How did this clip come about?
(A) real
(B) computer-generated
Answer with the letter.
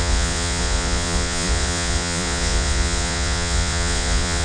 B